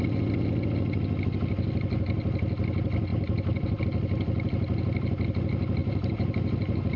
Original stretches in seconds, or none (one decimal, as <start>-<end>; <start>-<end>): 0.0-3.1; 3.8-5.8